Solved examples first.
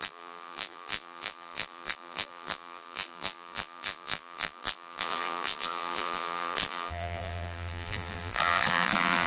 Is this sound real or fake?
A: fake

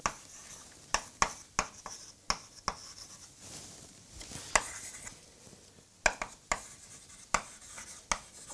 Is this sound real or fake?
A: real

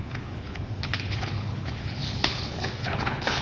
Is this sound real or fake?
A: fake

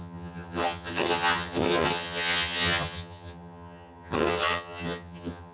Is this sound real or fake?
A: fake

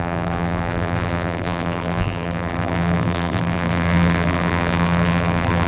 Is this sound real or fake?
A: fake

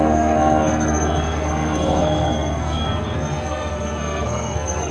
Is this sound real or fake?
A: fake